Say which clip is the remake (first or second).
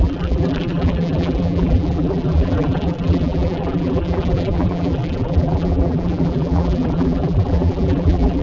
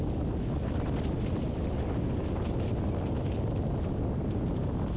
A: first